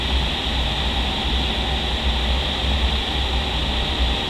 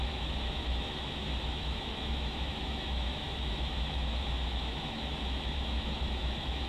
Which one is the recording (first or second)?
first